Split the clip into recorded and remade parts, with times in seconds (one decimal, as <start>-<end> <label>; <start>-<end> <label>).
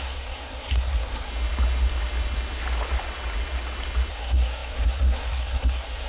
0.0-1.3 remade; 1.3-4.1 recorded; 4.1-6.1 remade